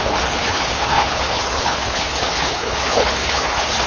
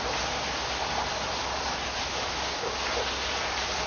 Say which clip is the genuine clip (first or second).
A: second